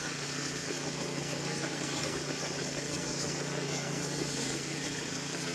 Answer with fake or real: fake